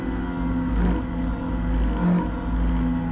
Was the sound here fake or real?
real